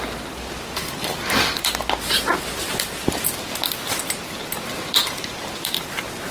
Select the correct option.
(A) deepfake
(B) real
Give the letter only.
B